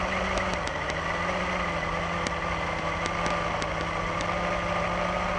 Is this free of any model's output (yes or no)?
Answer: yes